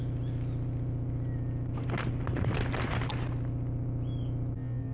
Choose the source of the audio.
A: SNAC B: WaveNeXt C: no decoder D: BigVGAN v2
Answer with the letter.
C